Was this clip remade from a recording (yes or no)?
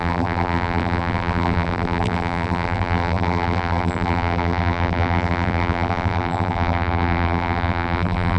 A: yes